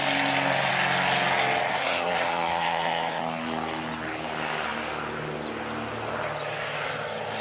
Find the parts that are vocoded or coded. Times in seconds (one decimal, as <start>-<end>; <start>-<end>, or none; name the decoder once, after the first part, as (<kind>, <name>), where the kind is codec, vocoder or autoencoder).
1.7-3.2 (codec, SNAC)